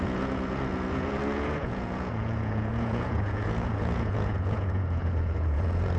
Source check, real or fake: fake